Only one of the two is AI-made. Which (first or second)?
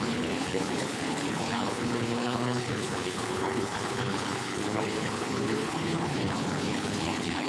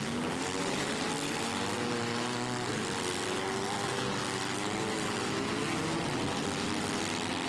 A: first